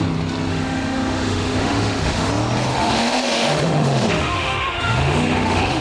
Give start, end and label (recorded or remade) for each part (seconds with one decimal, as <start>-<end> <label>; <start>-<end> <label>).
0.0-0.5 recorded; 0.5-2.3 remade; 2.3-2.7 recorded; 2.7-5.8 remade